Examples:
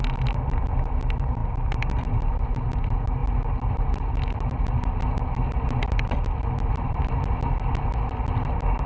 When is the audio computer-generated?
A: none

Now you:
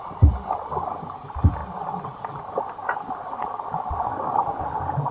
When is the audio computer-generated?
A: 4.1-4.6 (codec, DAC)